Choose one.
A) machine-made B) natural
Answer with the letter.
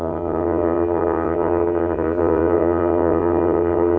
A